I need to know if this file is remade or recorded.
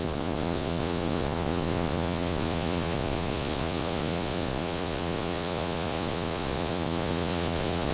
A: remade